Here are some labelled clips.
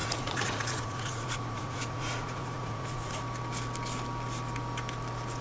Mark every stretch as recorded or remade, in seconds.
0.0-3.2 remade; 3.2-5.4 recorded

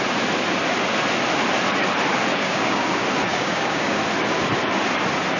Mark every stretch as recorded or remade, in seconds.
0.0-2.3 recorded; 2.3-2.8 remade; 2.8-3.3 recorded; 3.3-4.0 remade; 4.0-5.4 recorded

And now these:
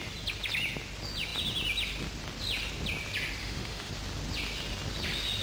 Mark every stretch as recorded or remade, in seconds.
0.0-3.4 recorded; 3.4-3.9 remade; 3.9-5.4 recorded

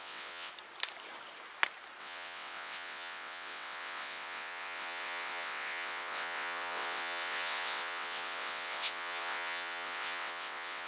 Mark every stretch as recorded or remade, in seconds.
0.0-0.5 remade; 0.5-2.0 recorded; 2.0-10.9 remade